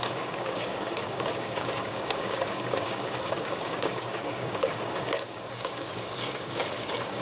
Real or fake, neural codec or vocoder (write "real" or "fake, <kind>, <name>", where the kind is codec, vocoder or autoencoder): fake, codec, DAC